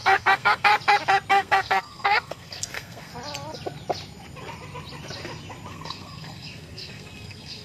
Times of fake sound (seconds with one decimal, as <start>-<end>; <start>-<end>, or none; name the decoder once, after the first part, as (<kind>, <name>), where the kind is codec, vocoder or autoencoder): 0.0-0.7 (codec, SNAC); 1.3-3.1; 5.7-7.6